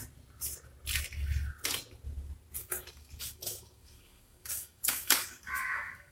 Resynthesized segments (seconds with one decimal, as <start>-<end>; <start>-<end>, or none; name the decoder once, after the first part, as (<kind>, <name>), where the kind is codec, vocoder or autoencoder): 2.6-6.1 (codec, DAC)